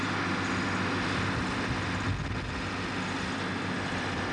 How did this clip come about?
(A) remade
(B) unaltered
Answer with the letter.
B